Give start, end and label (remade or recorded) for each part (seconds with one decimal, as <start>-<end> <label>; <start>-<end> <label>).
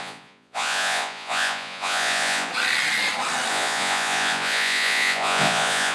0.0-2.5 remade; 2.5-3.5 recorded; 3.5-5.9 remade